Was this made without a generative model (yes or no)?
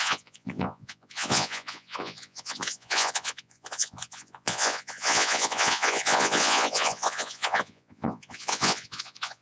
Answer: no